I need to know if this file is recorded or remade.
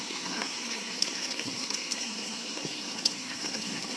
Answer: remade